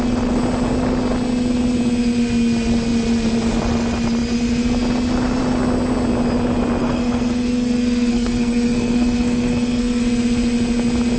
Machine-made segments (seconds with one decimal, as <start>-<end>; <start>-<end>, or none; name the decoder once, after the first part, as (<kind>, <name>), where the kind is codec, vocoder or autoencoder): 6.8-10.0 (codec, SNAC)